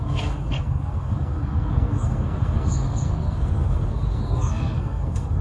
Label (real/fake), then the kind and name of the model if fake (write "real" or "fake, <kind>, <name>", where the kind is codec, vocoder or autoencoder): fake, codec, SNAC